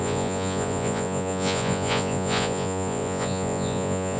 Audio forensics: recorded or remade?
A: remade